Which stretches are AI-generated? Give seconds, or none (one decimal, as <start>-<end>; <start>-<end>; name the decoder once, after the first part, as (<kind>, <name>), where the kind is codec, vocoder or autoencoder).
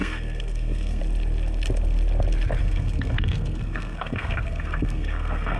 0.0-1.0 (codec, SNAC); 2.6-5.6